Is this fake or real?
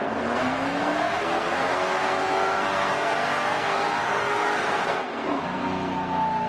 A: fake